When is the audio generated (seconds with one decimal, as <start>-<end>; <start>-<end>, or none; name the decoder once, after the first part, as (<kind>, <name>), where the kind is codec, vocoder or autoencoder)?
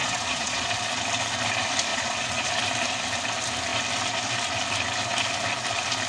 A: 0.0-0.7 (vocoder, Vocos); 1.9-2.5